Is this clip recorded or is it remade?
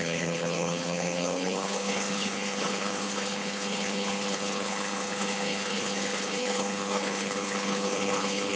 remade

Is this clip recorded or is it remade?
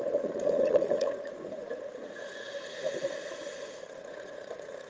remade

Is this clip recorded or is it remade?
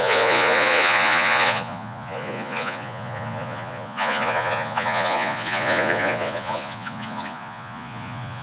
remade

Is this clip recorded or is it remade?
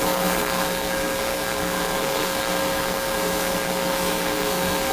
remade